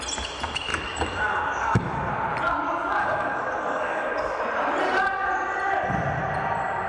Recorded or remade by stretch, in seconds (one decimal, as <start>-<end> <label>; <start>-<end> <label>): 0.0-0.7 recorded; 0.7-2.1 remade; 2.1-3.0 recorded; 3.0-4.4 remade; 4.4-6.9 recorded